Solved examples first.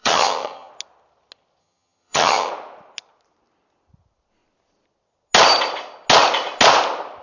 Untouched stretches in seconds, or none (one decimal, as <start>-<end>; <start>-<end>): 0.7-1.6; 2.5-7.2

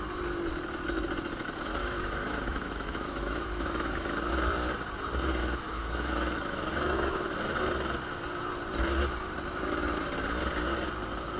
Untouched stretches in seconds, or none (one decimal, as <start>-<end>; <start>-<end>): 0.0-1.8; 4.3-5.4; 7.5-11.4

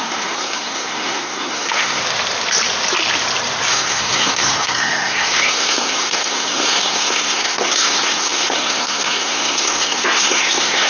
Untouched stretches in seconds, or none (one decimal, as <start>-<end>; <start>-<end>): 2.0-3.7